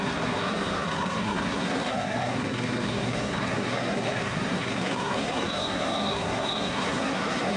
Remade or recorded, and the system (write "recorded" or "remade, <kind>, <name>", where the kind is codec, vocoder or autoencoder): remade, codec, SNAC